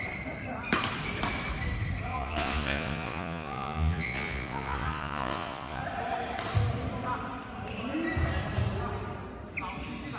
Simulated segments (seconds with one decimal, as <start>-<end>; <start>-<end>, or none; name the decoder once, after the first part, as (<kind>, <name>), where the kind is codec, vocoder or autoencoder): 2.1-5.8 (vocoder, Vocos)